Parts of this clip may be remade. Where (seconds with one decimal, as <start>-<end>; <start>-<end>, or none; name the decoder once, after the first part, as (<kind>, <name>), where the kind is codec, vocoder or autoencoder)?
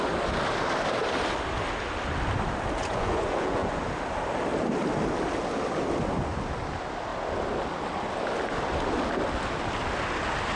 2.8-3.8 (vocoder, Vocos)